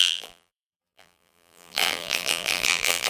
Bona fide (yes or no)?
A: no